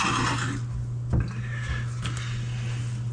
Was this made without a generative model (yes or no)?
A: yes